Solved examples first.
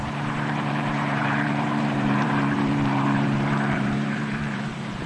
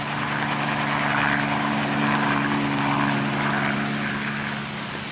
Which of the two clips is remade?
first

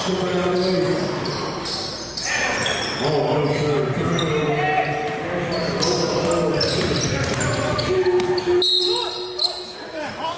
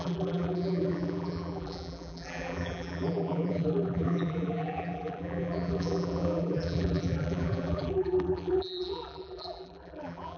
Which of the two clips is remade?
second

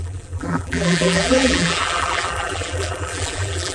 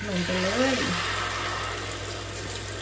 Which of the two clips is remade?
first